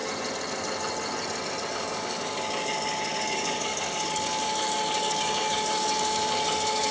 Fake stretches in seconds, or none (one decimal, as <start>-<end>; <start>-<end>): 1.7-6.9

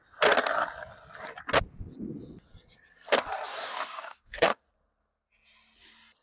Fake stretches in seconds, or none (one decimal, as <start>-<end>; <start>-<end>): 3.5-4.6

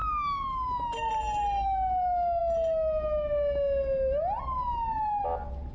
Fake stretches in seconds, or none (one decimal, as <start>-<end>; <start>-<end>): none